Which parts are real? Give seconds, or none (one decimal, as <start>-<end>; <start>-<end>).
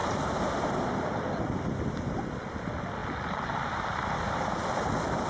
2.2-5.3